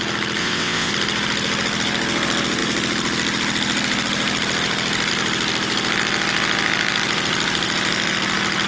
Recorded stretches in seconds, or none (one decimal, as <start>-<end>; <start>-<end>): 0.0-0.4; 0.9-8.7